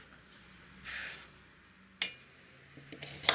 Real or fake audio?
real